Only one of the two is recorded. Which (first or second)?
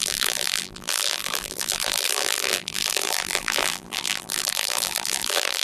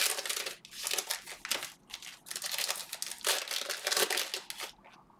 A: second